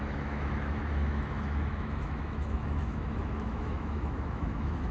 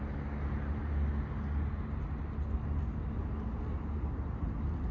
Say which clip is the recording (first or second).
second